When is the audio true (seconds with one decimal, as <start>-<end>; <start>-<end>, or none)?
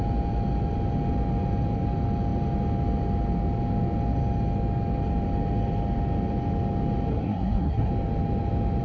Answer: 0.0-7.1; 7.9-8.8